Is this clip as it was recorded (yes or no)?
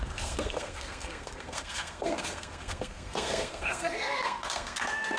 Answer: no